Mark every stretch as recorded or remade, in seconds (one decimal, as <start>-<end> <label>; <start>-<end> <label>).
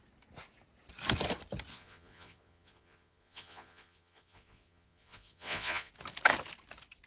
0.0-1.7 recorded; 1.7-5.9 remade; 5.9-7.1 recorded